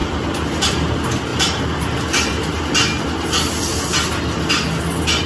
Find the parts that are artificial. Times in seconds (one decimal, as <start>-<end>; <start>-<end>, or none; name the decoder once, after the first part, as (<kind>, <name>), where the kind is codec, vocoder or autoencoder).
none